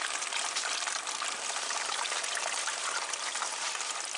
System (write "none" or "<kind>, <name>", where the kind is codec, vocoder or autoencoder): none